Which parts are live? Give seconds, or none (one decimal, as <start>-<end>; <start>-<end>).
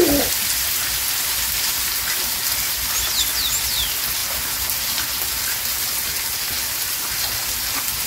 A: 0.0-8.1